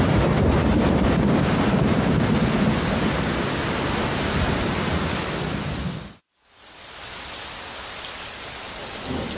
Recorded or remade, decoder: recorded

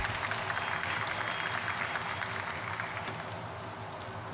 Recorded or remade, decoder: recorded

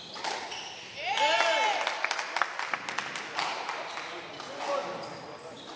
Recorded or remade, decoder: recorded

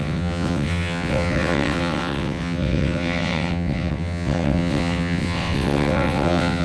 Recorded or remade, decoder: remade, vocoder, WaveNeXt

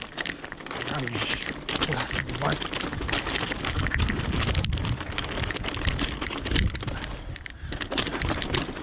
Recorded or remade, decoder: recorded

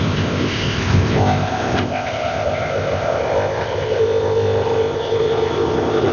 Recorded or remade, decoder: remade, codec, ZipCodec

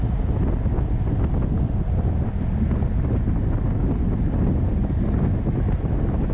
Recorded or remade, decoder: recorded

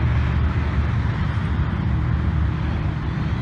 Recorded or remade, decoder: recorded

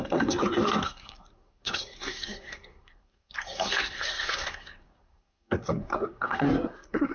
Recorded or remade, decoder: remade, codec, SNAC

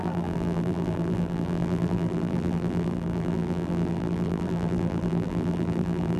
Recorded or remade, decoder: remade, vocoder, BigVGAN v2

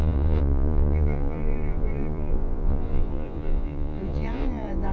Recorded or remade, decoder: remade, vocoder, Vocos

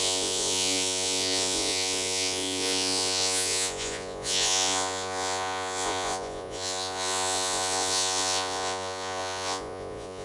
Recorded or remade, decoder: remade, vocoder, Vocos